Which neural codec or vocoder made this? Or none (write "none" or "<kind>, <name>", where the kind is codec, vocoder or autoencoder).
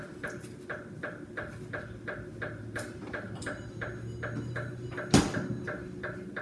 none